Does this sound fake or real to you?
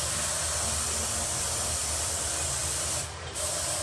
real